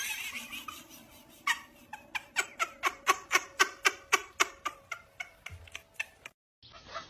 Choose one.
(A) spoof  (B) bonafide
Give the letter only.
B